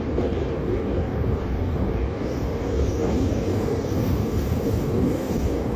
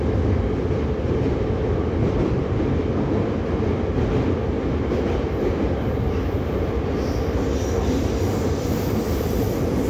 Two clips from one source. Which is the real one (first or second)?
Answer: second